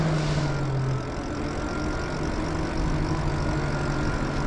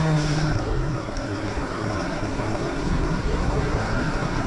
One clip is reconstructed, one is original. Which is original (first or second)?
first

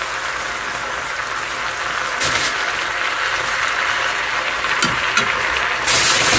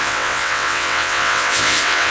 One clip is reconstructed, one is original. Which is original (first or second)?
first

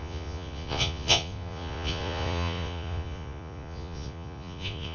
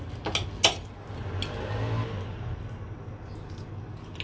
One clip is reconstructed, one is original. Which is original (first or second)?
second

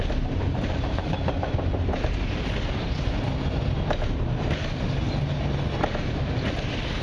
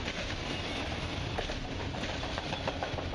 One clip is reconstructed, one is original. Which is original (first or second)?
first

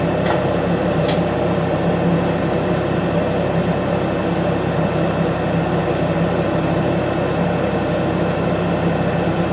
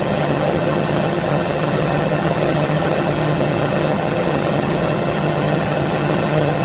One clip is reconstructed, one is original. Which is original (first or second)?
first